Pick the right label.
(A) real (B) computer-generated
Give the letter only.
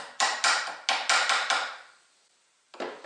A